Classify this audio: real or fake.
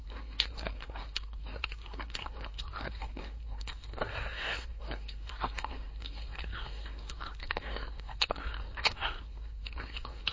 fake